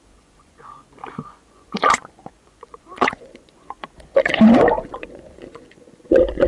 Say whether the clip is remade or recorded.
remade